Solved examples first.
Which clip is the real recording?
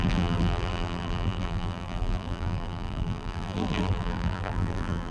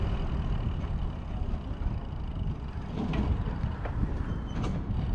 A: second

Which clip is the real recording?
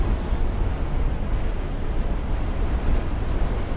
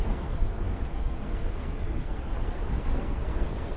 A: first